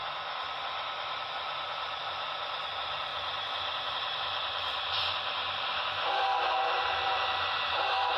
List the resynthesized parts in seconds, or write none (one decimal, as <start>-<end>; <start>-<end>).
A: 0.0-3.1; 3.9-8.2